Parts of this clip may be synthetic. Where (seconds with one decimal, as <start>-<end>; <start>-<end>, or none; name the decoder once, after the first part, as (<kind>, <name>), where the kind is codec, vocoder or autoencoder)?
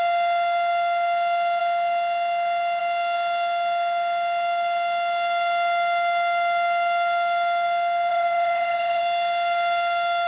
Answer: 8.1-9.0 (vocoder, HiFi-GAN)